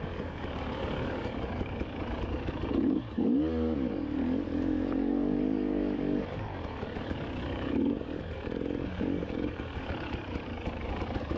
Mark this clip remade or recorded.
remade